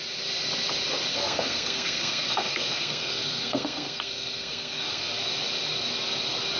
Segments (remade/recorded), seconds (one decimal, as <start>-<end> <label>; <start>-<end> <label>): 0.0-1.1 recorded; 1.1-5.1 remade; 5.1-6.6 recorded